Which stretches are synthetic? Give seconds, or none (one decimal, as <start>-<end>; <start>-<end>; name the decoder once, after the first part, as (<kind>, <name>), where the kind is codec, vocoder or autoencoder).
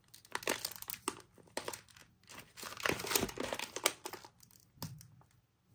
none